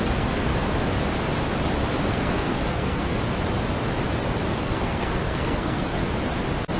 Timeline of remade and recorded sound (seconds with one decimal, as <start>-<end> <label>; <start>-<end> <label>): 0.0-0.5 remade; 0.5-2.1 recorded; 2.1-3.1 remade; 3.1-4.6 recorded; 4.6-6.0 remade; 6.0-6.8 recorded